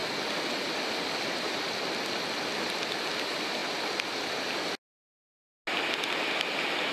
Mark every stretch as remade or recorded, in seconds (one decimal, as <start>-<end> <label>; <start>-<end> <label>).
0.0-6.9 recorded